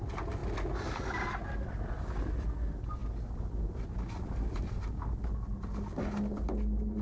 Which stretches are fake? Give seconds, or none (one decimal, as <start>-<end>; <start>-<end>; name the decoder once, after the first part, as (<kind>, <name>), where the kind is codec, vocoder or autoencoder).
none